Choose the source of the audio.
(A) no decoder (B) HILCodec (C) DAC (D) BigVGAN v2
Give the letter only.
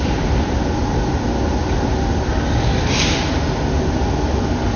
A